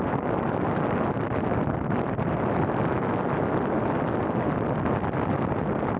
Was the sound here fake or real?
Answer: real